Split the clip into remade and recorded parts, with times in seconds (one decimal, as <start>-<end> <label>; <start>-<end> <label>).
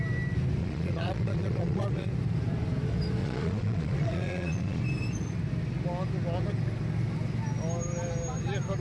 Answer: 0.0-0.6 recorded; 0.6-2.1 remade; 2.1-3.2 recorded; 3.2-4.8 remade; 4.8-8.8 recorded